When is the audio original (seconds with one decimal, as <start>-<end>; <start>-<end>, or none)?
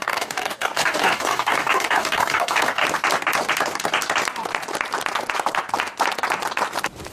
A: 2.8-7.1